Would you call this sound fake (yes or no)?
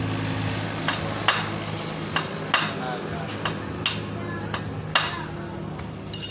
no